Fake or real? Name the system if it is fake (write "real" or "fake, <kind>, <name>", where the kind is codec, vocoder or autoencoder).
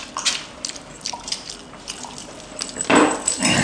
real